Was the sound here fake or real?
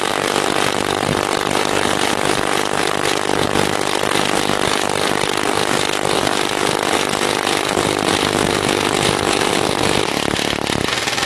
real